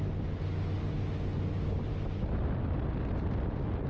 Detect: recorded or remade recorded